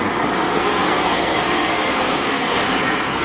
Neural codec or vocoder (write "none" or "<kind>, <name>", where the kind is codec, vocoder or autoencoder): codec, SNAC